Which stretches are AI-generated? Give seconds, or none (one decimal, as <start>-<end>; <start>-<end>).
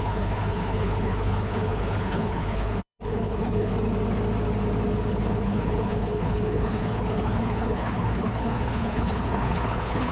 0.0-3.7; 5.1-10.1